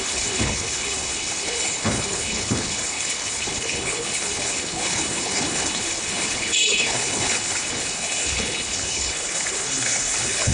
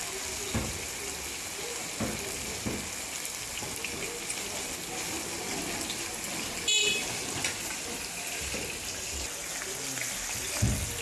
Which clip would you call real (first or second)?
second